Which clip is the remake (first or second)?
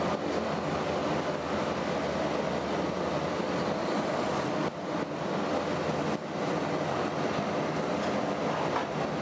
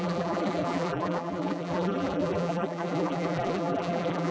second